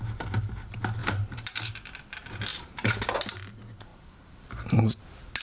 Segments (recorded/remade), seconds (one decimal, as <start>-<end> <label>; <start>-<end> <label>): 0.0-1.0 recorded; 1.0-1.7 remade; 1.7-2.5 recorded; 2.5-3.0 remade; 3.0-3.9 recorded; 3.9-5.0 remade; 5.0-5.4 recorded